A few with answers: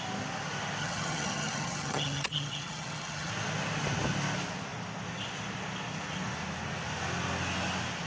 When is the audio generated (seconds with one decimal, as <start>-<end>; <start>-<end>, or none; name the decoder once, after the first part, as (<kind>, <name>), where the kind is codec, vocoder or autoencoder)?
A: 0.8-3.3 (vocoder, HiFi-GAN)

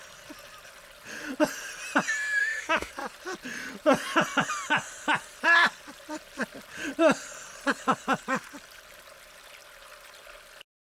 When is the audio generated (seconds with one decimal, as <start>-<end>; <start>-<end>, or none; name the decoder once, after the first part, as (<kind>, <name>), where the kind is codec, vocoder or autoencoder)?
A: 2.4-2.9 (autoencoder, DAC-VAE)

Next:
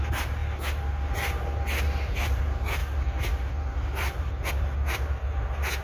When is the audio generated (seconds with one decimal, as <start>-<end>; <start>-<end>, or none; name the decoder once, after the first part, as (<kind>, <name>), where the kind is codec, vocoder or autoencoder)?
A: none